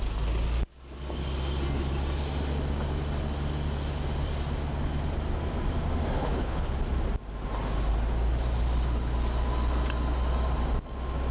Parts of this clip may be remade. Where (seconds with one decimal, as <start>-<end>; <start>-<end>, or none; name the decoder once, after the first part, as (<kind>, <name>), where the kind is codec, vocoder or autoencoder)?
6.2-6.7 (codec, HILCodec)